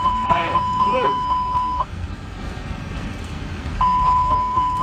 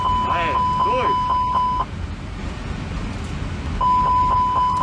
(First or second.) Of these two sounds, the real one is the second